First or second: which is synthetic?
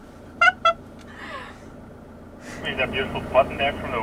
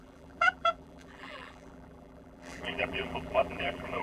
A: second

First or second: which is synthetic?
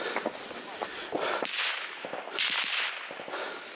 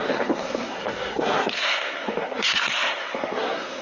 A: second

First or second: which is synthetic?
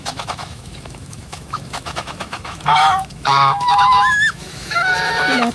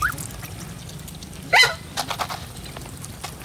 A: first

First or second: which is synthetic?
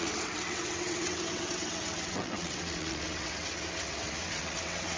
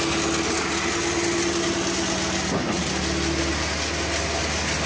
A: first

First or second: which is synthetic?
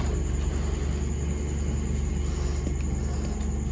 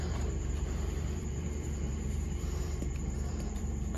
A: second